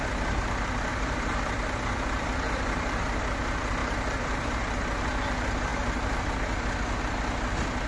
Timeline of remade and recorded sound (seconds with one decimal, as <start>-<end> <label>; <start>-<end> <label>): 0.0-0.9 recorded; 0.9-3.2 remade; 3.2-3.8 recorded; 3.8-4.8 remade; 4.8-7.9 recorded